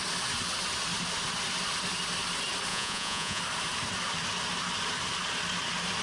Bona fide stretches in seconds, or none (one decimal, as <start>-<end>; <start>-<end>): 0.0-2.7; 3.4-6.0